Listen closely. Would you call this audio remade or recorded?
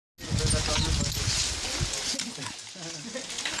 recorded